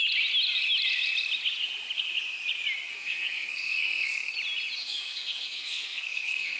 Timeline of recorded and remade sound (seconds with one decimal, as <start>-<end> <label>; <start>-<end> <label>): 0.0-2.9 recorded; 2.9-4.3 remade; 4.3-4.8 recorded; 4.8-6.6 remade